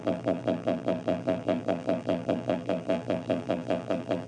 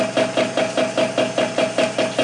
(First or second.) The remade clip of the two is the first